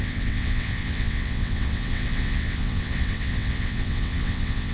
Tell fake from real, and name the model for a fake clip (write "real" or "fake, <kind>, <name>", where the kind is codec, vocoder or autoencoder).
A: fake, vocoder, WaveNeXt